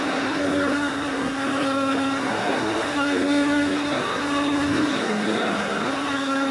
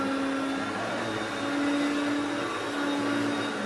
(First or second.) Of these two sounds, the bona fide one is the second